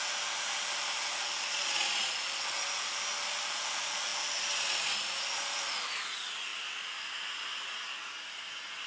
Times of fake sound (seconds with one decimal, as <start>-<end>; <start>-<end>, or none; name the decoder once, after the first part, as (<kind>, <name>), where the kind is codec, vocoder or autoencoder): none